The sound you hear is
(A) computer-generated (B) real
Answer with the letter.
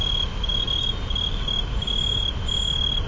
B